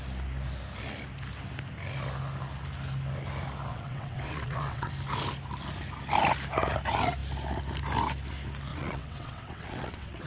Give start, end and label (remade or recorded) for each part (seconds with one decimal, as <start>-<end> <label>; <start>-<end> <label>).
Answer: 0.0-3.7 recorded; 3.7-4.9 remade; 4.9-8.7 recorded; 8.7-10.3 remade